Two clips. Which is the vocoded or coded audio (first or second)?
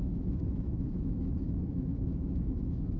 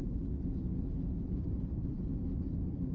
first